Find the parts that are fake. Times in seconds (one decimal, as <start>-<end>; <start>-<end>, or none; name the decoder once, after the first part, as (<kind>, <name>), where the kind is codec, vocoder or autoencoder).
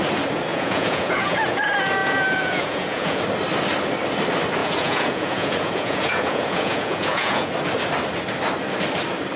0.5-1.6 (vocoder, Vocos); 2.0-3.2; 4.6-7.5